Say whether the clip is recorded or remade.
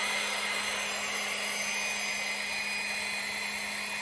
recorded